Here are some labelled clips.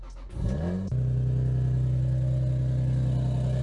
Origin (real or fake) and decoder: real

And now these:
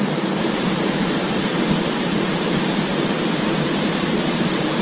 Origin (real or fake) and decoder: fake, vocoder, BigVGAN v2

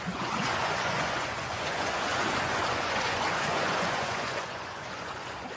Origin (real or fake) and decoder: fake, vocoder, Vocos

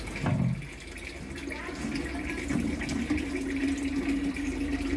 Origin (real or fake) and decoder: real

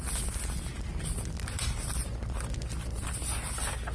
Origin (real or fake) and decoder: real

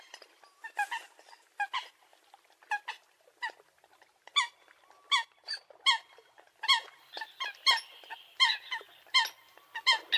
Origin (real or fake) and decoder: real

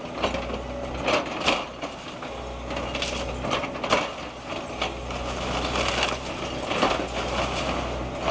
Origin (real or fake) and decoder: real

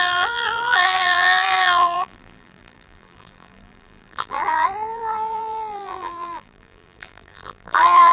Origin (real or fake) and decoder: fake, vocoder, BigVGAN v2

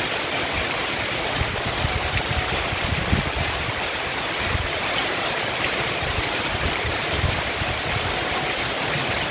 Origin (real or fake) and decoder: real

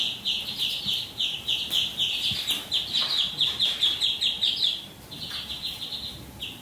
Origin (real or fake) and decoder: real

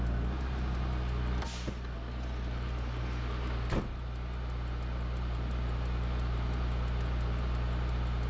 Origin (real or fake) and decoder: real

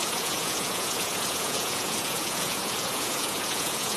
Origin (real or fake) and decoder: fake, vocoder, Vocos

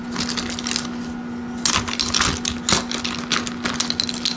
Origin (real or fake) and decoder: real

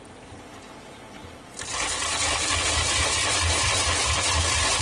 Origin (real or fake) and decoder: real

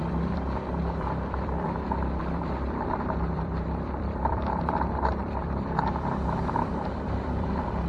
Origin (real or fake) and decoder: fake, vocoder, BigVGAN v2